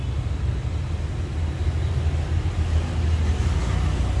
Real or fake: real